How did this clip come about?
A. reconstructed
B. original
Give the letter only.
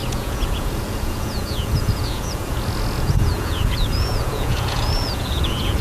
A